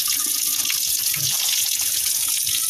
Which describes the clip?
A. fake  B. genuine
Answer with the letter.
A